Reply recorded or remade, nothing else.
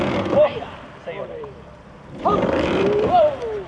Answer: remade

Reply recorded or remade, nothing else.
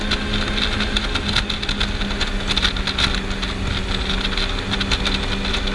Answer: recorded